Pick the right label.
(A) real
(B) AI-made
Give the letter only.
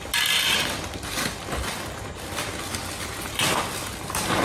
A